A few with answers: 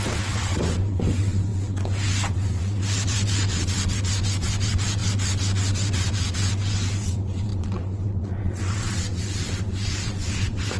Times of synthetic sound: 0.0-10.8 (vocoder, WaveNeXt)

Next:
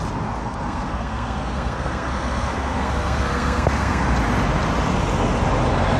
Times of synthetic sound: 0.4-4.0 (codec, SNAC)

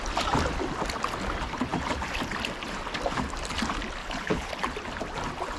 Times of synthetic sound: 4.0-4.5 (codec, HILCodec)

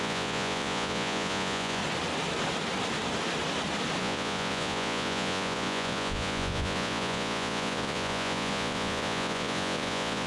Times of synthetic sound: 0.0-1.8 (vocoder, Vocos); 4.0-10.3